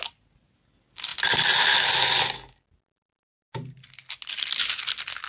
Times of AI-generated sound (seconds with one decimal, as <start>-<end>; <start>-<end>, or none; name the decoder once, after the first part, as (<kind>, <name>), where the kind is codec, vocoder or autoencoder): none

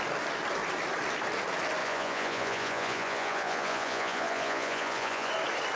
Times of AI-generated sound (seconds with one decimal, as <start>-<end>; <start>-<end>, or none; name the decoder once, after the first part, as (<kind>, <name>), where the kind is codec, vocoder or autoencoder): 1.8-5.3 (vocoder, Vocos)

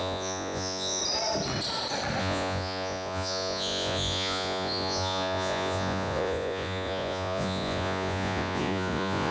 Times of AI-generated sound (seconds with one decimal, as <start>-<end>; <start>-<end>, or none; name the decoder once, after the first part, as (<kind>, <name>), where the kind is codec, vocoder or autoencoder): 0.0-1.0 (vocoder, Vocos); 2.2-9.3

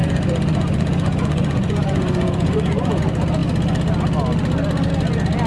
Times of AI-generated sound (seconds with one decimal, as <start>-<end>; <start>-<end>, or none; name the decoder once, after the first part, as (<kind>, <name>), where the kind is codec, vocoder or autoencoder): 0.0-3.0 (vocoder, Vocos)

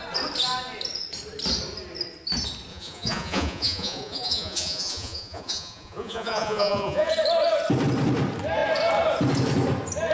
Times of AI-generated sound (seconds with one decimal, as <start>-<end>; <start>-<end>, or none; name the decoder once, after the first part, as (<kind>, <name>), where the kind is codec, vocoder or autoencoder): 2.7-7.1 (vocoder, Vocos)

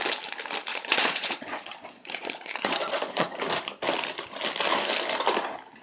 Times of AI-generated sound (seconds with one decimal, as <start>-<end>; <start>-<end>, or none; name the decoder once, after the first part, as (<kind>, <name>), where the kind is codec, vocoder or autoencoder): 0.7-3.4 (vocoder, Vocos)

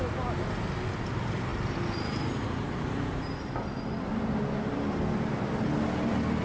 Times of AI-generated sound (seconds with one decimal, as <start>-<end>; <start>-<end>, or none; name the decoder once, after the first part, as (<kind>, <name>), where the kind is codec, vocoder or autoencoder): none

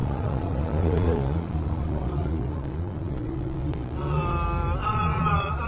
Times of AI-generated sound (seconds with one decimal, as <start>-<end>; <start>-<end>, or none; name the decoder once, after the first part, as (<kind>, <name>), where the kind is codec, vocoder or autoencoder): 0.0-4.2 (vocoder, Vocos); 4.8-5.7